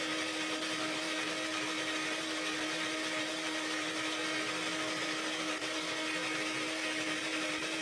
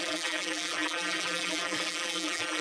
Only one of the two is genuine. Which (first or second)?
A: first